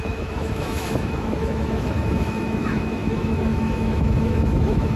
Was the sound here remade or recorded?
remade